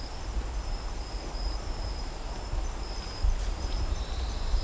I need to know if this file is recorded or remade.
remade